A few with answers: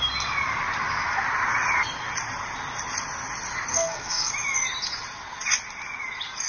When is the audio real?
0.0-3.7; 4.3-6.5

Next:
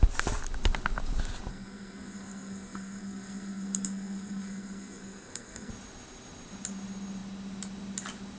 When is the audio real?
0.0-1.5; 5.7-8.4